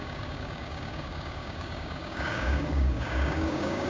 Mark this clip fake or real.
fake